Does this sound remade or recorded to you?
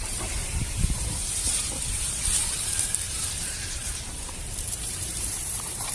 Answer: remade